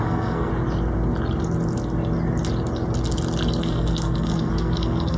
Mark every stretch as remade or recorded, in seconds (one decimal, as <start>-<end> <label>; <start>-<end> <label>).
0.0-0.5 remade; 0.5-3.6 recorded; 3.6-5.2 remade